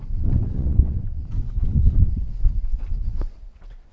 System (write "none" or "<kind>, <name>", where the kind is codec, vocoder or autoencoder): vocoder, WaveNeXt